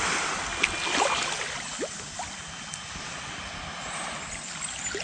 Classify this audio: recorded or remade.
recorded